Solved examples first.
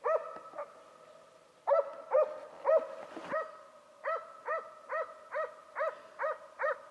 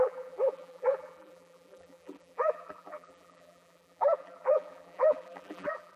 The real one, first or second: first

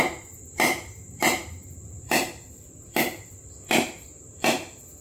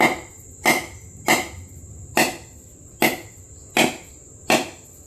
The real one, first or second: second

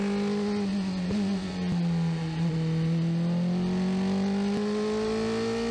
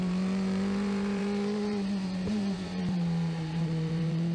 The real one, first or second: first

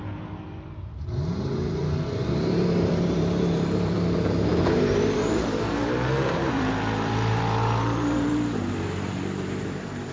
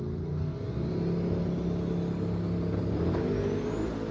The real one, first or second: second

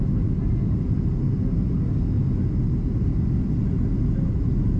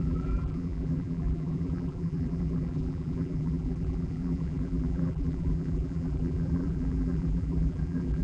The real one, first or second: first